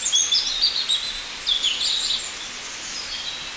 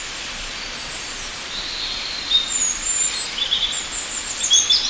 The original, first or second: first